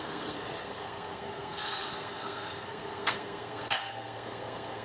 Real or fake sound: fake